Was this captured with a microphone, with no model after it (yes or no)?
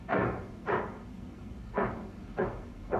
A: no